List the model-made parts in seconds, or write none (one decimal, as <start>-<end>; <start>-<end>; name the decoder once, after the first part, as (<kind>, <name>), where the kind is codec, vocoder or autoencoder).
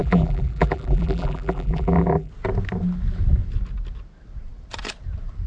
0.0-2.3 (vocoder, BigVGAN v2)